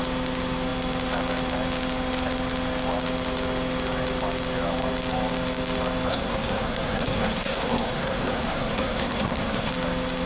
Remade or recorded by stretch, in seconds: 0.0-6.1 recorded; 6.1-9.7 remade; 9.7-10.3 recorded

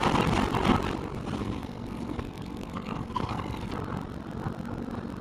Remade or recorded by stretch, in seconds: 0.0-1.4 recorded; 1.4-3.7 remade; 3.7-5.2 recorded

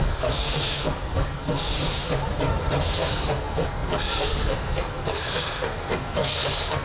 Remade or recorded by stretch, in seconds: 0.0-1.7 remade; 1.7-2.9 recorded; 2.9-6.8 remade

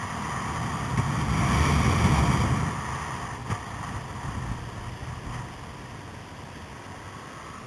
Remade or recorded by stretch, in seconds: 0.0-7.7 recorded